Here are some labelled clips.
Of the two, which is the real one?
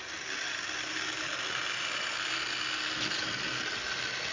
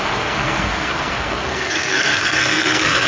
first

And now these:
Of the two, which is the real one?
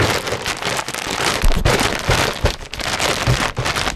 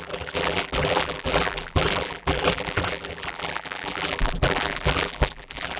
first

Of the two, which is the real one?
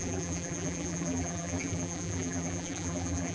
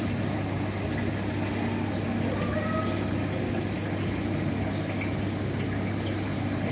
second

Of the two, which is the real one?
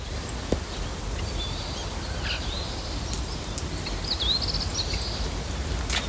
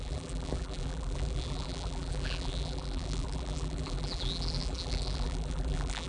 first